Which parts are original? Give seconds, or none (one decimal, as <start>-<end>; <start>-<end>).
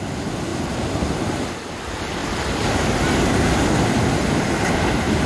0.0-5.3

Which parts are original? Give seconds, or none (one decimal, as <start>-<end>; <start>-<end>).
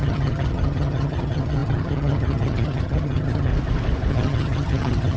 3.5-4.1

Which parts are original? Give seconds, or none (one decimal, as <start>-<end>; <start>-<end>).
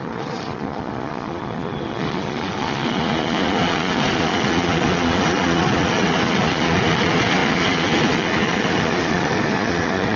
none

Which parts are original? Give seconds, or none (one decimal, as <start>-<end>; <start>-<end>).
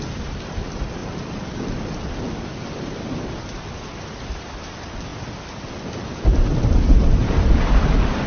0.0-8.3